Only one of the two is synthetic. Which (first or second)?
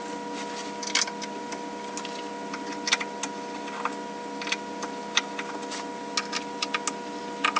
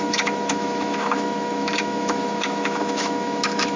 second